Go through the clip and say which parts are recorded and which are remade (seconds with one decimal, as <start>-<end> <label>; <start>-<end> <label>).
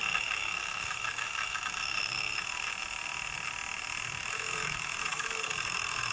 0.0-2.7 remade; 2.7-4.2 recorded; 4.2-6.1 remade